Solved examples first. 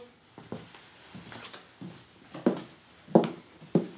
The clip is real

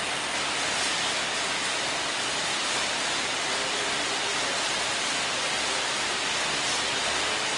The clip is real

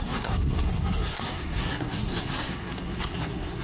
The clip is fake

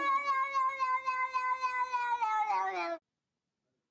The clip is real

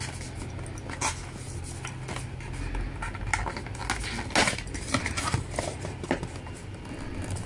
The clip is real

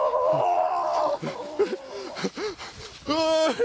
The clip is real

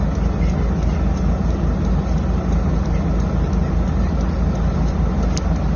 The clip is real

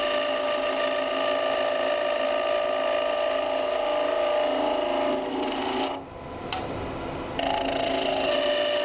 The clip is real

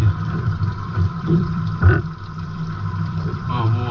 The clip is fake